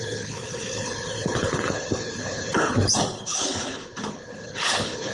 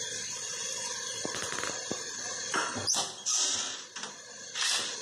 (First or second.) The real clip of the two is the second